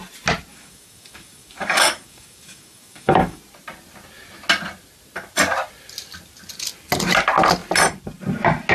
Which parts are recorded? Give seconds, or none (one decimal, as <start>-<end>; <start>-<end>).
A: 0.0-0.5; 3.4-8.7